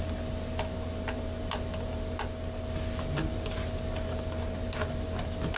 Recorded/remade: recorded